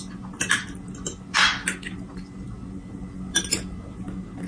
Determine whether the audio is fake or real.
real